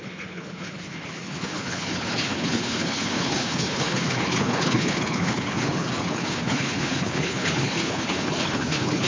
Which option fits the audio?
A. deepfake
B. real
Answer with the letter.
A